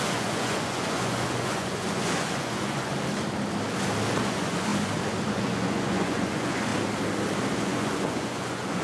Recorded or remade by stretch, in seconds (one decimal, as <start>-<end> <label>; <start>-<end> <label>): 0.0-2.9 remade; 2.9-4.2 recorded; 4.2-4.7 remade; 4.7-5.3 recorded; 5.3-6.7 remade; 6.7-7.6 recorded; 7.6-8.8 remade